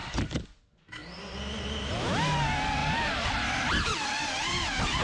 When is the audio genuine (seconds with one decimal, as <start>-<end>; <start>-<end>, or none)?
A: 0.6-2.8; 4.2-5.0